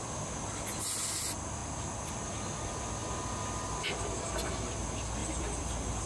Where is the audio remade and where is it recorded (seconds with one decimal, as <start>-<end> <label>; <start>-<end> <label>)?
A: 0.0-5.2 recorded; 5.2-6.1 remade